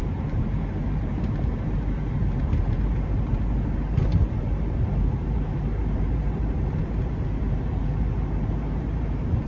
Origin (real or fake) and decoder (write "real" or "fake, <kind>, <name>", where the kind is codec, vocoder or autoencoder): fake, vocoder, BigVGAN v2